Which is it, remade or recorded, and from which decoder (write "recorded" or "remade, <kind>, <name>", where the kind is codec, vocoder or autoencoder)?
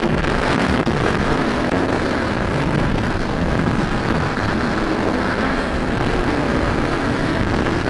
remade, codec, SNAC